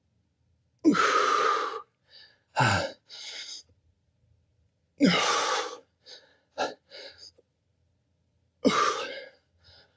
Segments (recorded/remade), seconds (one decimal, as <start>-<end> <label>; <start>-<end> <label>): 0.0-10.0 recorded